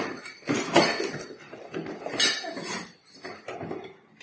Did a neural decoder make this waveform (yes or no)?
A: no